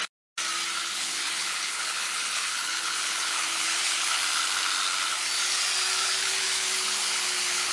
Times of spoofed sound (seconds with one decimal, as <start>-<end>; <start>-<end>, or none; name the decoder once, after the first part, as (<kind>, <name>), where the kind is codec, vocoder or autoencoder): 0.8-4.2 (codec, HILCodec); 6.0-7.7